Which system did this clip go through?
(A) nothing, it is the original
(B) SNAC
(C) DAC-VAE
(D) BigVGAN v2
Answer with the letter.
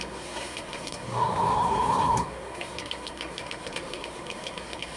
B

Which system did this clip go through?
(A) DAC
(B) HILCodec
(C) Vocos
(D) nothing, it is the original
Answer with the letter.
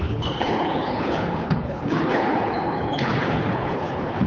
B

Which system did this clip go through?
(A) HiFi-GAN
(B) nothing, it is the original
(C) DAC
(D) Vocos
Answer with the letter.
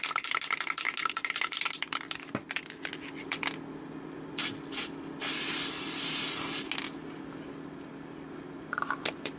B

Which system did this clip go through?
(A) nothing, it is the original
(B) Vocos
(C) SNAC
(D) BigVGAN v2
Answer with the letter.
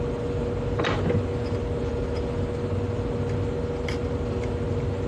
A